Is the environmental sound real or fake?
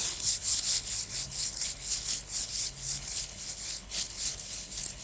fake